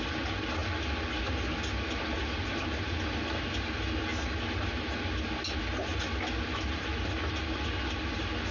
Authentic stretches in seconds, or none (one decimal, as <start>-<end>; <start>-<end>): 0.0-8.5